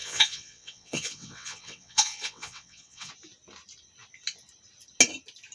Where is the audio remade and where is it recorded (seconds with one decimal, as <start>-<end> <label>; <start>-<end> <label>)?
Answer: 0.0-3.1 remade; 3.1-5.5 recorded